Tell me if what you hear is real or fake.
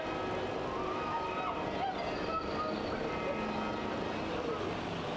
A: real